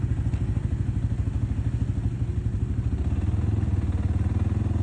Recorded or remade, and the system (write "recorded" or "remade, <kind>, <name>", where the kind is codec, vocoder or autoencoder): recorded